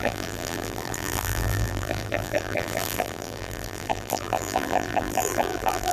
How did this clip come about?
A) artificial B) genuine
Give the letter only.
A